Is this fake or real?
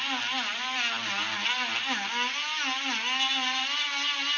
real